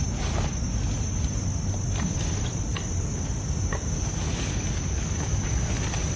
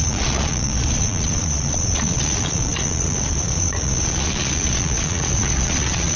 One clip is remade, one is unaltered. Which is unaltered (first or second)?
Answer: first